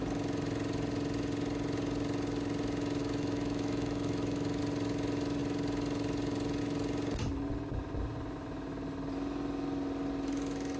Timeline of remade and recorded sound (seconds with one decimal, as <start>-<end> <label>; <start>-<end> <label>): 0.0-3.0 recorded; 3.0-4.6 remade; 4.6-10.8 recorded